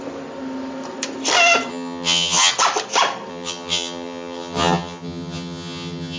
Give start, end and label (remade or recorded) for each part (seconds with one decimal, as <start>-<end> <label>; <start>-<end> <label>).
0.0-1.7 recorded; 1.7-2.5 remade; 2.5-3.3 recorded; 3.3-6.2 remade